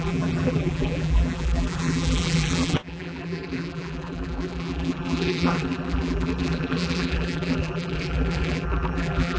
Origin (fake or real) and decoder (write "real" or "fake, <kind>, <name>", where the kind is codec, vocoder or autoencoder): fake, vocoder, BigVGAN v2